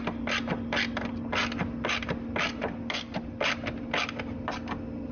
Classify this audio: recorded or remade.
recorded